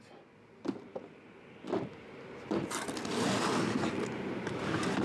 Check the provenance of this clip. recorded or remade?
recorded